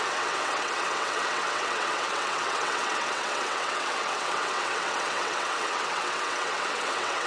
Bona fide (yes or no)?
no